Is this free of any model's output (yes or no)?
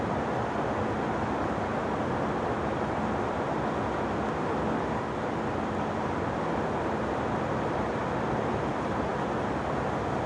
yes